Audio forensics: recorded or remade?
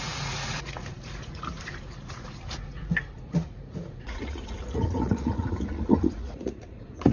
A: remade